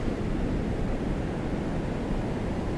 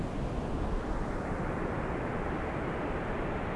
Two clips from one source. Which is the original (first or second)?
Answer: first